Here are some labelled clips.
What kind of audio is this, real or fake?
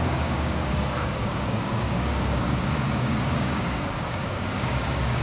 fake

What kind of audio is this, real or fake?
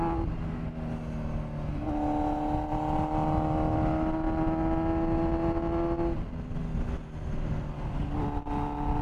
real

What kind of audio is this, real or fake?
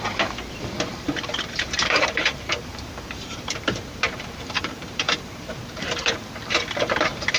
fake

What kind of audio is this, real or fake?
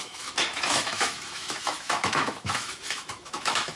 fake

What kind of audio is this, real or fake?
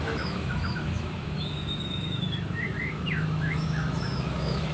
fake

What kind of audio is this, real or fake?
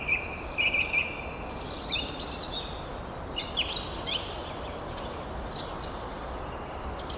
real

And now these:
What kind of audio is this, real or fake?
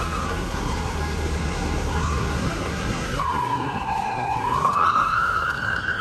fake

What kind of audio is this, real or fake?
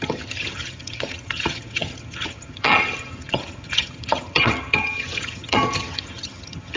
fake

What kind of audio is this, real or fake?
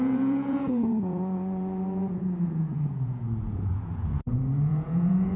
fake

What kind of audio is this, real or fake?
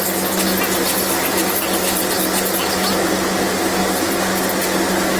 real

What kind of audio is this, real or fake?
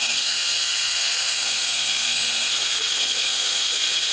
fake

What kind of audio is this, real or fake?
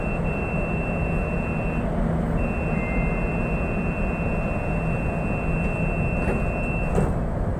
real